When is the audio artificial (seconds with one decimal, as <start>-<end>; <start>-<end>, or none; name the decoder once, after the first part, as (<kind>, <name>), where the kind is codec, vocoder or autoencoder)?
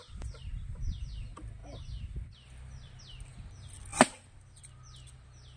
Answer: 1.6-3.0 (vocoder, BigVGAN v2)